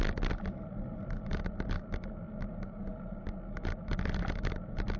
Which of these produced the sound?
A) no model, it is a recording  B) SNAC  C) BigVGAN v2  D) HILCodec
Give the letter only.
A